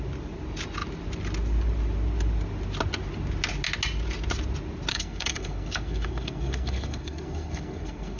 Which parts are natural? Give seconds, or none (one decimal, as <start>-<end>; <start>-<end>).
0.0-4.9